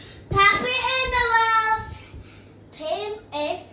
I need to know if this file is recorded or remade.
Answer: recorded